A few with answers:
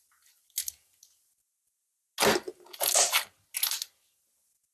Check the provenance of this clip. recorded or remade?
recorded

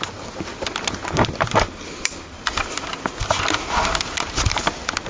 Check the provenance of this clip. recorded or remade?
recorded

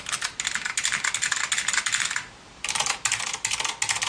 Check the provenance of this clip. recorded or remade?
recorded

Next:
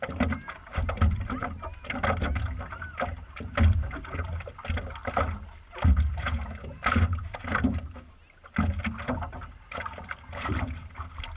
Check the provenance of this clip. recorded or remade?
recorded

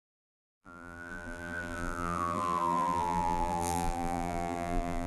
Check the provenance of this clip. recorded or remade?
remade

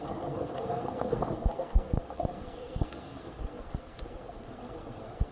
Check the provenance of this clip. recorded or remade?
remade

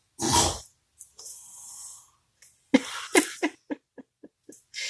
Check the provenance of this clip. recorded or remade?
recorded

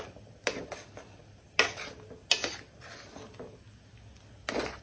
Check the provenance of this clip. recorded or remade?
recorded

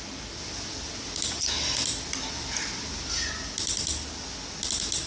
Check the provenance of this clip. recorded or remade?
recorded